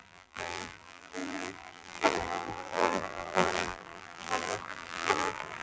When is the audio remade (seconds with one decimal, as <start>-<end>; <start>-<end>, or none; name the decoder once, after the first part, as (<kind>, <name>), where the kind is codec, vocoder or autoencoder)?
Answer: 0.0-5.6 (vocoder, BigVGAN v2)